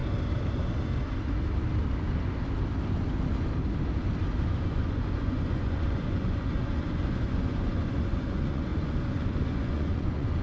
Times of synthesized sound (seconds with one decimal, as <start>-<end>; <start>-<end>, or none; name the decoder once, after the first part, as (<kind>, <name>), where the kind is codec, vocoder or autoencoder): 4.6-10.4 (vocoder, Vocos)